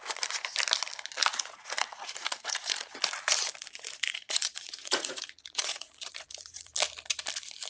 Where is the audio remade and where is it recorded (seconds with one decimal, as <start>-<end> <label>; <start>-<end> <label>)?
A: 0.0-1.2 recorded; 1.2-3.0 remade; 3.0-3.6 recorded; 3.6-6.7 remade; 6.7-7.7 recorded